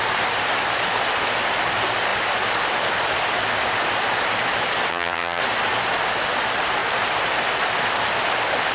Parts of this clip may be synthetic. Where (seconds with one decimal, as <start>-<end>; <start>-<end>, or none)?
4.9-5.4